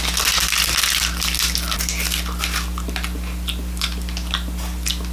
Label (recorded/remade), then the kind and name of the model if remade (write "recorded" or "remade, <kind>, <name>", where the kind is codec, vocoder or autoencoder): recorded